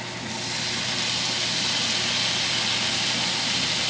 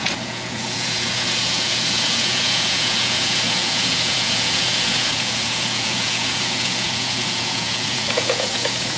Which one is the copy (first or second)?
second